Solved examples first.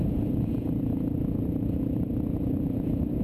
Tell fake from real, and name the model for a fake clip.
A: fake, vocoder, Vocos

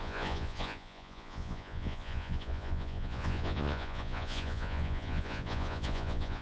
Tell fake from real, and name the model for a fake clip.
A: fake, vocoder, Vocos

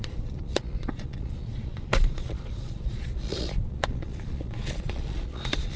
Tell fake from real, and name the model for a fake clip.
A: fake, vocoder, Vocos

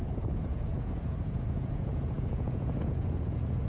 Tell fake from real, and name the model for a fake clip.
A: fake, vocoder, Vocos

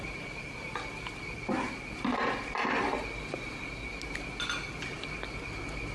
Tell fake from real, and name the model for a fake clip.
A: real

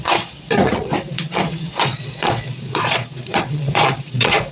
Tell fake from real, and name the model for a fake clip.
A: fake, vocoder, Vocos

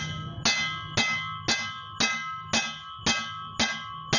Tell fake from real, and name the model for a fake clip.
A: real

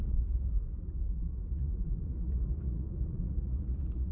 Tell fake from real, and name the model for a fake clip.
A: fake, vocoder, Vocos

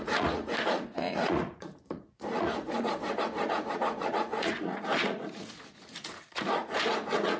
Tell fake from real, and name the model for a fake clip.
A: fake, vocoder, Vocos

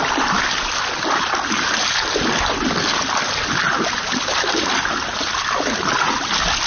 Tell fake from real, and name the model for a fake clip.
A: real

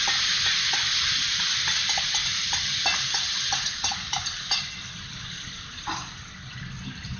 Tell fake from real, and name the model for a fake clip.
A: real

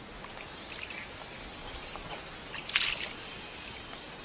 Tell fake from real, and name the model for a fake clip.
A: real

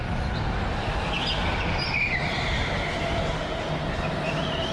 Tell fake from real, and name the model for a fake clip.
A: real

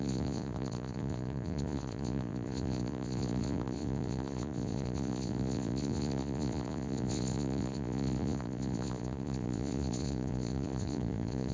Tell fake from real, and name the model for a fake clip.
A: fake, vocoder, Vocos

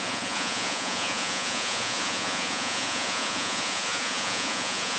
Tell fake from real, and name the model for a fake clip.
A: fake, vocoder, Vocos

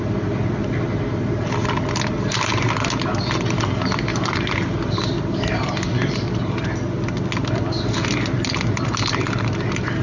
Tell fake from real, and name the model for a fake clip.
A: real